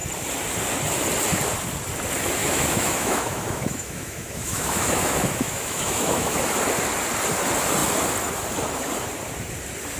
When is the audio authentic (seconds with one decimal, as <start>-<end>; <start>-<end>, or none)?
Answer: 0.0-2.4; 6.4-10.0